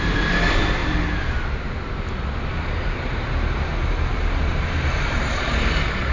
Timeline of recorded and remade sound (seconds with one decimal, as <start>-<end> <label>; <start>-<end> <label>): 0.0-0.8 remade; 0.8-2.5 recorded; 2.5-3.7 remade; 3.7-4.4 recorded; 4.4-6.1 remade